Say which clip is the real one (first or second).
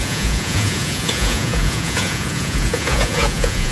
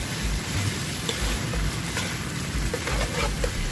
second